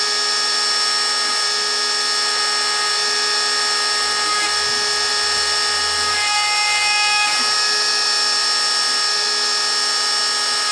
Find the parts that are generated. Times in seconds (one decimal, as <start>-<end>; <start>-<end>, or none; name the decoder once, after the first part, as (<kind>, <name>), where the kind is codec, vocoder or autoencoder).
none